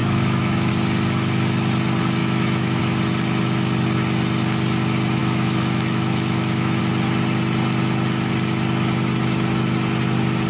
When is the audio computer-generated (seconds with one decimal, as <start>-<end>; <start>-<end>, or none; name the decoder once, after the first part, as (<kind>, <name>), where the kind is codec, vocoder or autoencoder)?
0.0-0.7 (autoencoder, DAC-VAE); 2.2-2.8; 5.2-6.8

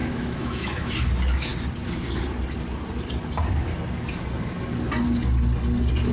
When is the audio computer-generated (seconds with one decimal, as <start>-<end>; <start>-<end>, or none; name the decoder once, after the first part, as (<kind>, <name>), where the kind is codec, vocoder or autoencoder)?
0.0-0.9 (autoencoder, DAC-VAE)